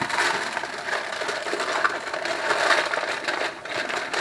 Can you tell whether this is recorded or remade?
recorded